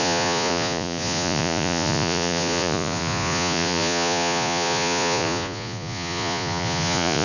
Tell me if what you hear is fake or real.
fake